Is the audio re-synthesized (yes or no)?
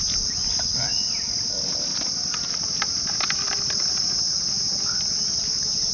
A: no